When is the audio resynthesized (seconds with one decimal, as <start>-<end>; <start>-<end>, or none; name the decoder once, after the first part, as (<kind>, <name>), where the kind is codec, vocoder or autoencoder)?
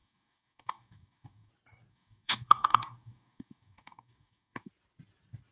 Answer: 0.0-1.5 (codec, DAC); 1.9-4.7